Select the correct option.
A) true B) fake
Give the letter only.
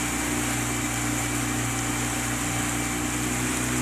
A